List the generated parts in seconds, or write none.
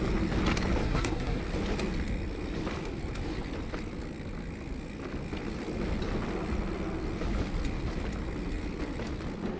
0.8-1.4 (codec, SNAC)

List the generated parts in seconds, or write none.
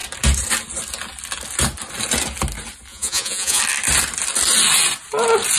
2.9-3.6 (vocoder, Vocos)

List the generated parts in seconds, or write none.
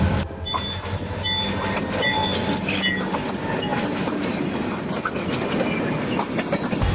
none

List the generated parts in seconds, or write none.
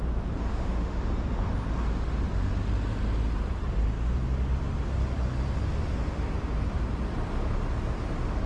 0.5-1.1 (autoencoder, DAC-VAE)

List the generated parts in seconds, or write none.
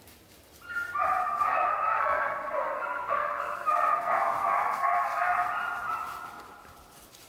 1.2-5.5 (codec, SNAC)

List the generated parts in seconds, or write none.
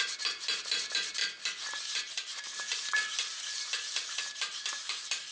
0.0-1.2 (vocoder, BigVGAN v2); 1.8-5.3